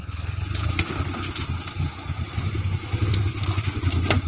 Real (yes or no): yes